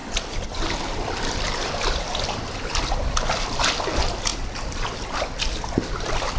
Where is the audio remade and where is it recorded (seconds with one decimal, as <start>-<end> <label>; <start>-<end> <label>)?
0.0-6.4 recorded